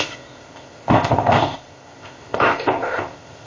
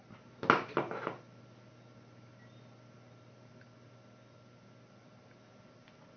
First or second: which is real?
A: second